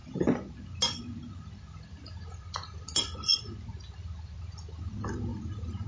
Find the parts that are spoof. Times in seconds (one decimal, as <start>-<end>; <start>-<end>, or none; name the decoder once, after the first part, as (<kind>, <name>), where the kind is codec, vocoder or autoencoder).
none